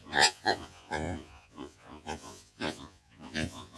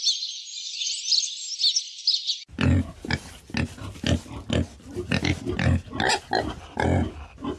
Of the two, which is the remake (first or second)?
first